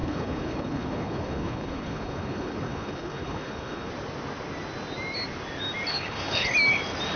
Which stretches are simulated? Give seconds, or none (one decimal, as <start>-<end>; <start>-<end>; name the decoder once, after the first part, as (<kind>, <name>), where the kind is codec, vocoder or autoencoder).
0.0-3.9 (codec, HILCodec); 5.9-6.5